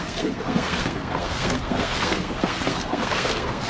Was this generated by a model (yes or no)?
yes